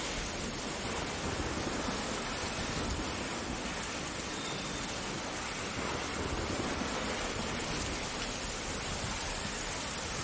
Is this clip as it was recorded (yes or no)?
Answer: yes